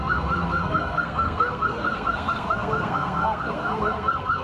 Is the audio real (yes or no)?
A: no